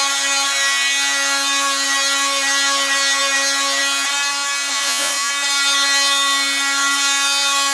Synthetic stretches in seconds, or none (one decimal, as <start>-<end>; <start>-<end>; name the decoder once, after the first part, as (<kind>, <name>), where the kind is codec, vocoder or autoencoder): 4.7-5.3 (vocoder, Vocos)